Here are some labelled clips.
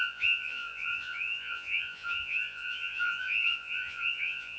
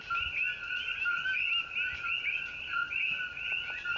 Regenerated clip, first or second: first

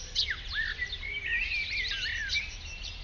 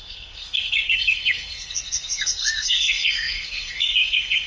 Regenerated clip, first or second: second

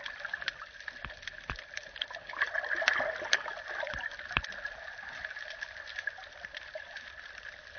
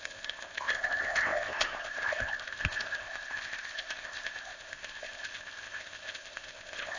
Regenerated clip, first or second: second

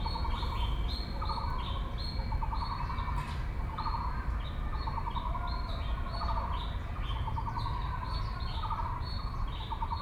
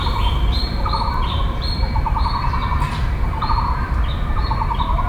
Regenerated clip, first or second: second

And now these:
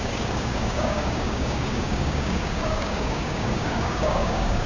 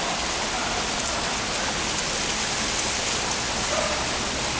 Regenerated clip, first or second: first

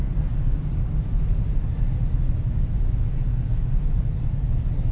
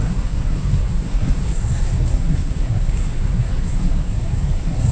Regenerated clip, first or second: second